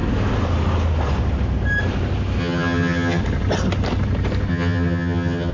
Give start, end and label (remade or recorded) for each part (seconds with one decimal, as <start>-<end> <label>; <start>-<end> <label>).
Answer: 0.0-2.4 recorded; 2.4-3.2 remade; 3.2-4.5 recorded; 4.5-5.5 remade